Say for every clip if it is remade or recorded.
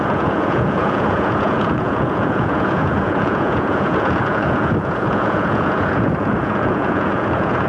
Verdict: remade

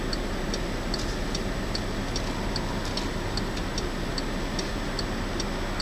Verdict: recorded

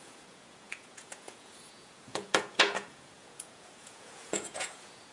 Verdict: remade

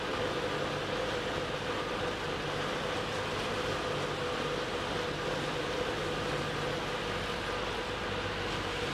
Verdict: recorded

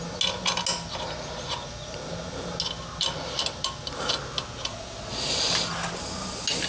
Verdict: recorded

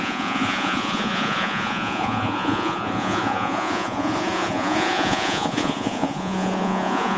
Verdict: remade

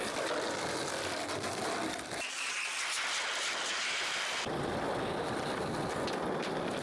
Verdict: recorded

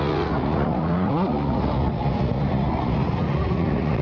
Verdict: remade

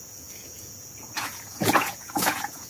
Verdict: remade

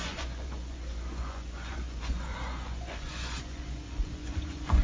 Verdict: remade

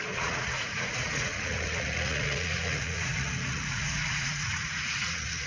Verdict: remade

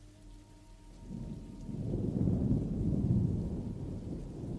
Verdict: recorded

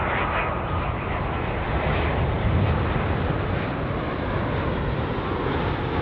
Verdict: recorded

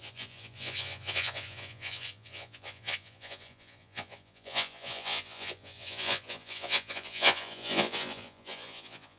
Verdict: remade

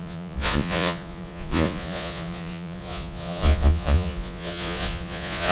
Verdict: remade